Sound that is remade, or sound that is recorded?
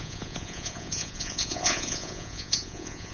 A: remade